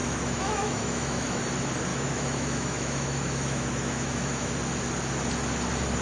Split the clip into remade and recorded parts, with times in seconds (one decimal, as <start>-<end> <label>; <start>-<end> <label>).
0.0-1.4 remade; 1.4-1.9 recorded; 1.9-4.5 remade; 4.5-6.0 recorded